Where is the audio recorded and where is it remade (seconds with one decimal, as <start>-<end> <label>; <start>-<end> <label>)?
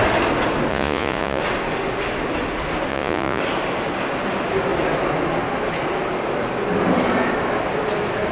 0.0-0.7 recorded; 0.7-1.4 remade; 1.4-2.9 recorded; 2.9-3.4 remade; 3.4-8.3 recorded